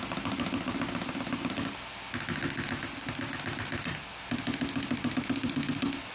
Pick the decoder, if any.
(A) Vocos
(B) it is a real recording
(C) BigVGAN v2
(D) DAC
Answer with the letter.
B